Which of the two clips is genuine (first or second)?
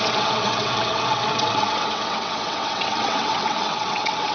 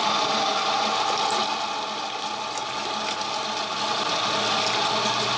second